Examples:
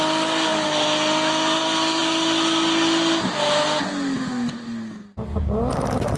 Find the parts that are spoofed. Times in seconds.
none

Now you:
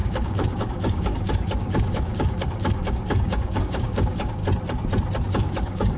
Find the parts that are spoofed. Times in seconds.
0.0-4.4; 5.3-6.0

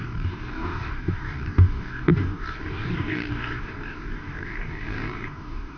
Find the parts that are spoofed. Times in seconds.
0.0-5.8

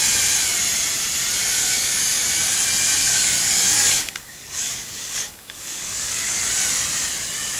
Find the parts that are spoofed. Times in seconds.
1.4-2.2; 3.0-6.4

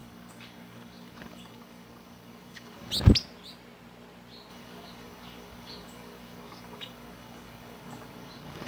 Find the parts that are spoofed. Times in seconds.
0.0-2.9; 4.5-8.7

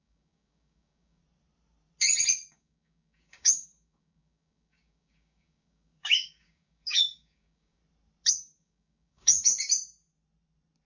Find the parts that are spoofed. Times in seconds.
0.0-1.2; 2.5-7.8; 8.3-9.5

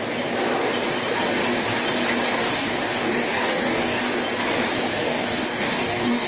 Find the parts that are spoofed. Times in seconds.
2.4-4.2; 4.9-6.3

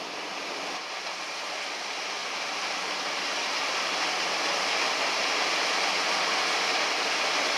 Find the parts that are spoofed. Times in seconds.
none